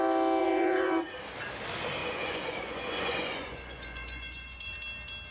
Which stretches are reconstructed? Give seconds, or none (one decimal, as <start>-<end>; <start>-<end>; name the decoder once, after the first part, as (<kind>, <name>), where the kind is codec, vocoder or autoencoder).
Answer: 0.4-1.1 (vocoder, Vocos); 2.0-4.7